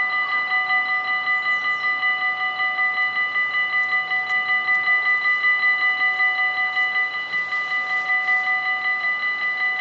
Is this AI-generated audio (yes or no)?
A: no